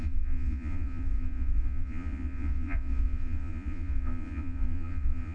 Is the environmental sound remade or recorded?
remade